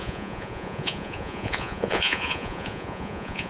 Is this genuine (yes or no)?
no